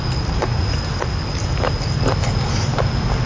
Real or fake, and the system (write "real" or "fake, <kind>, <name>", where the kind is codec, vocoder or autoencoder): real